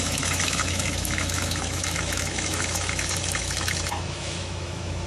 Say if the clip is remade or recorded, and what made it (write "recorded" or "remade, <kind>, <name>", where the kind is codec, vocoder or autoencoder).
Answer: remade, autoencoder, DAC-VAE